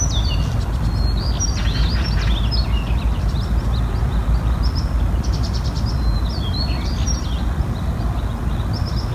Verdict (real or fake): real